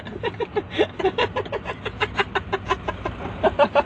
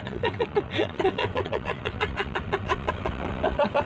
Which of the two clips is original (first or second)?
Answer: first